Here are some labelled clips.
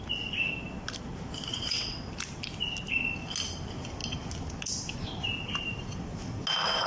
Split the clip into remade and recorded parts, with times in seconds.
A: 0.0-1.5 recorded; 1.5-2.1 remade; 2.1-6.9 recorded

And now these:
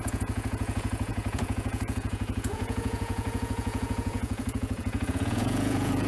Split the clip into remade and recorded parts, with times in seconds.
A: 0.0-6.1 remade

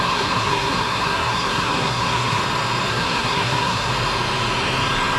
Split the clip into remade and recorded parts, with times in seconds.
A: 0.0-2.4 remade; 2.4-2.9 recorded; 2.9-3.9 remade; 3.9-5.2 recorded

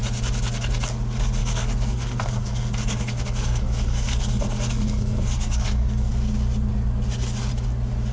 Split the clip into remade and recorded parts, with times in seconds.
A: 0.0-1.4 recorded; 1.4-6.1 remade; 6.1-8.1 recorded